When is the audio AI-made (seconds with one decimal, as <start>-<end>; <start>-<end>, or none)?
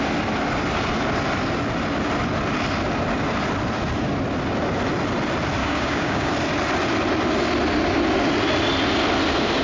5.6-6.3